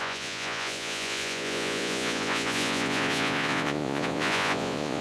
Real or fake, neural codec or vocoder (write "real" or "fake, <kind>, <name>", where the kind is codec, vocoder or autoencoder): fake, vocoder, Vocos